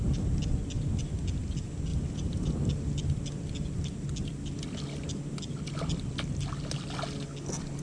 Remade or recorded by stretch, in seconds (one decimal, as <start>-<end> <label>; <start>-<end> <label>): 0.0-1.9 recorded; 1.9-2.5 remade; 2.5-7.8 recorded